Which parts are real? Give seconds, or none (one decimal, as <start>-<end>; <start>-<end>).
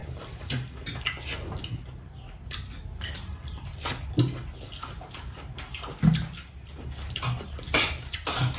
0.0-8.6